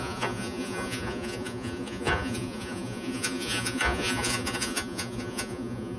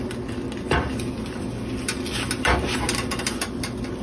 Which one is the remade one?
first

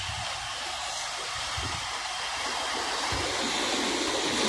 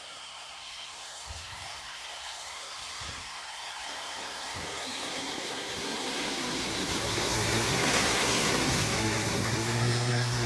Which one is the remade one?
second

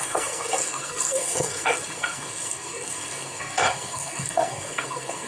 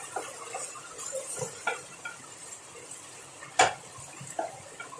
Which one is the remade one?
first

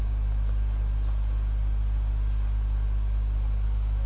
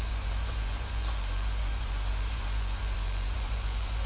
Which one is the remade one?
second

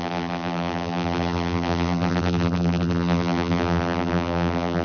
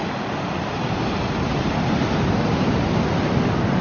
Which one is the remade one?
first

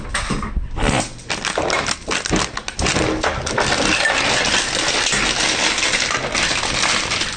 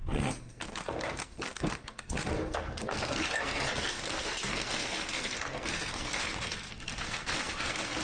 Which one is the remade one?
second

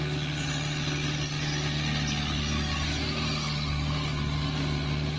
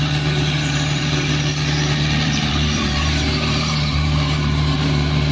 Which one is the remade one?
second